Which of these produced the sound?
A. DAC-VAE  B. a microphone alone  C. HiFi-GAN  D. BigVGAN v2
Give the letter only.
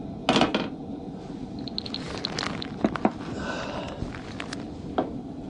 B